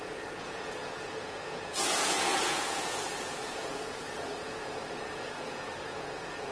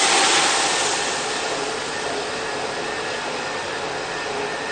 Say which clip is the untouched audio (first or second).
second